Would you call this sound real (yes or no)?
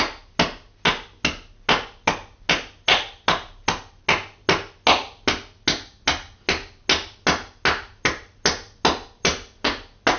yes